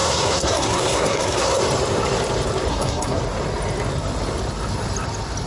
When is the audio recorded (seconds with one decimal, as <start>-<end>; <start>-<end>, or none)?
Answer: 1.6-2.7; 3.2-5.5

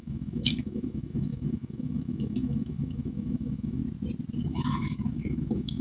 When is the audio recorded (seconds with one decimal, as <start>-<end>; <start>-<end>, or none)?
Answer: 3.8-4.4